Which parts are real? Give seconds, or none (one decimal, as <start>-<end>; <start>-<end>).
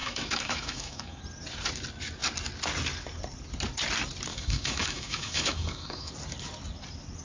1.2-4.3; 6.1-7.2